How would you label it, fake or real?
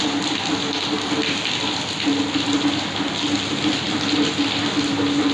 real